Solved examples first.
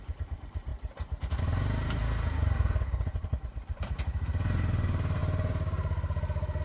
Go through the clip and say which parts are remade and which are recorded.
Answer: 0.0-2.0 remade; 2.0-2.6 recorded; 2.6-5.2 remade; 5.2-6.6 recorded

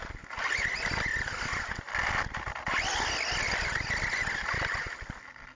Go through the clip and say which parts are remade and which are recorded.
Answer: 0.0-5.5 recorded

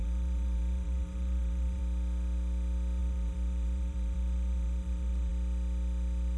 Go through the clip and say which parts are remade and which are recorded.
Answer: 0.0-1.8 remade; 1.8-3.0 recorded; 3.0-5.3 remade; 5.3-6.4 recorded

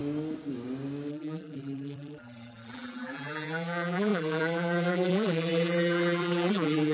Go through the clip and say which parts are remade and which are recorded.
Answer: 0.0-1.1 recorded; 1.1-6.9 remade

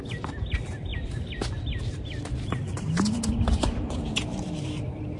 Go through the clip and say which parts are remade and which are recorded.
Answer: 0.0-2.7 recorded; 2.7-5.2 remade

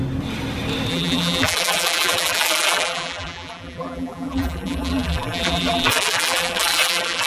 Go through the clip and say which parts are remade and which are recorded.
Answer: 0.0-0.9 recorded; 0.9-7.3 remade

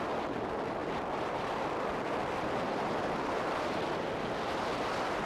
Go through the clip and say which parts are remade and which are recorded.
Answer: 0.0-0.8 recorded; 0.8-4.0 remade; 4.0-5.3 recorded

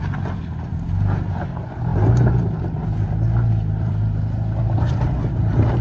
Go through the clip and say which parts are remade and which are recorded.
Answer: 0.0-0.7 recorded; 0.7-1.3 remade; 1.3-1.9 recorded; 1.9-5.8 remade